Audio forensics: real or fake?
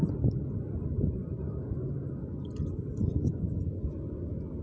real